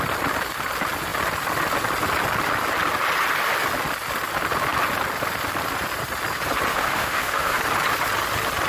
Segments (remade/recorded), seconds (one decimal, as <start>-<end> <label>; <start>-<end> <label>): 0.0-6.7 recorded; 6.7-7.6 remade; 7.6-8.7 recorded